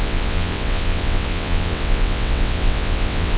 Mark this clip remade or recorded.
remade